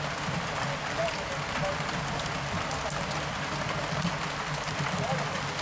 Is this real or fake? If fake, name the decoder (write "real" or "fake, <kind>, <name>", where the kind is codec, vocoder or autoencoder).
real